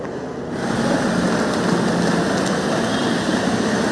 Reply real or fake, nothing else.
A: real